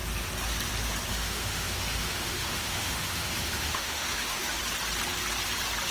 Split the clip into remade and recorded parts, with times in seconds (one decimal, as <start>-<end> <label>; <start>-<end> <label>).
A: 0.0-1.1 recorded; 1.1-4.6 remade; 4.6-5.9 recorded